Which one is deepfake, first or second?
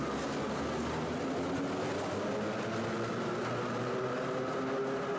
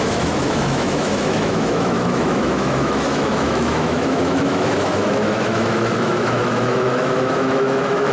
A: second